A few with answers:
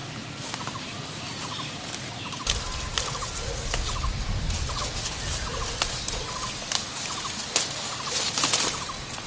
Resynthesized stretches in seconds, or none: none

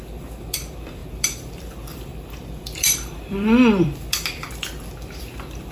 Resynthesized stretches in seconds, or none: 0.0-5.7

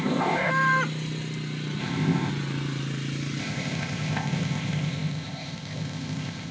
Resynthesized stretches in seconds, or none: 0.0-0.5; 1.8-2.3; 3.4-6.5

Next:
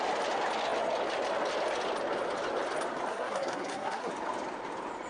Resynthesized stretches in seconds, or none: 3.1-4.1

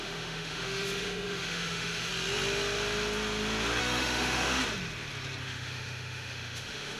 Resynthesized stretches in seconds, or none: 0.0-2.1; 3.8-4.6; 5.4-7.0

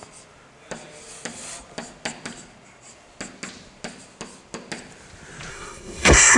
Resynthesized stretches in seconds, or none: 5.5-6.4

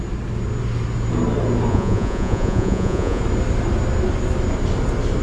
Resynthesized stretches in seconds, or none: 1.7-3.2